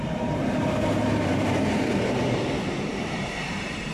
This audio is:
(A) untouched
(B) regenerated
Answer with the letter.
B